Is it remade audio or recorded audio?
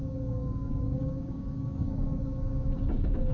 remade